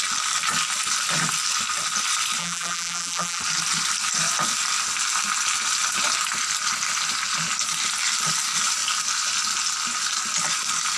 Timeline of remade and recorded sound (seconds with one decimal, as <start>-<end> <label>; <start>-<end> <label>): 0.0-2.4 recorded; 2.4-3.4 remade; 3.4-11.0 recorded

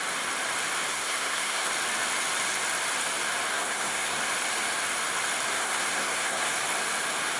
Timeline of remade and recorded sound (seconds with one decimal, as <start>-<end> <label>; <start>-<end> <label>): 0.0-0.9 recorded; 0.9-1.7 remade; 1.7-3.5 recorded; 3.5-4.2 remade; 4.2-5.5 recorded; 5.5-6.5 remade; 6.5-7.4 recorded

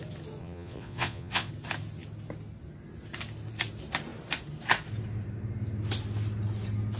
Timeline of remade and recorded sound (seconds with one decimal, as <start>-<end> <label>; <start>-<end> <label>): 0.0-0.4 recorded; 0.4-1.5 remade; 1.5-7.0 recorded

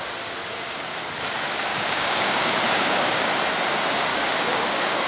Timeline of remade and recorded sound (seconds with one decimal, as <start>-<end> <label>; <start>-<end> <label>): 0.0-0.5 recorded; 0.5-1.1 remade; 1.1-1.7 recorded; 1.7-3.3 remade; 3.3-4.1 recorded; 4.1-5.1 remade

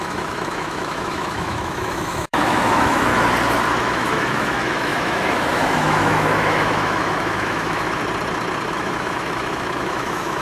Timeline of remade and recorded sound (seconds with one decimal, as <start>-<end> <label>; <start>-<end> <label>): 0.0-3.1 remade; 3.1-3.8 recorded; 3.8-8.0 remade; 8.0-8.7 recorded; 8.7-10.4 remade

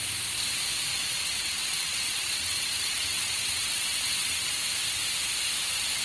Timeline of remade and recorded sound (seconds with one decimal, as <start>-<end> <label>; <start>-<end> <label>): 0.0-0.9 recorded; 0.9-4.5 remade; 4.5-6.0 recorded